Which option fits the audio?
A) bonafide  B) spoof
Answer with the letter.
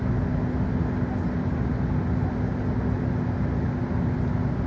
A